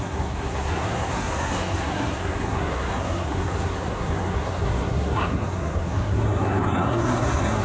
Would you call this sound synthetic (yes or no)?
yes